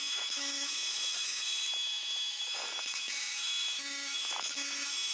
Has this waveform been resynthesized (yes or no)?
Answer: yes